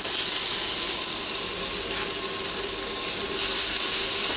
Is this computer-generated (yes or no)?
no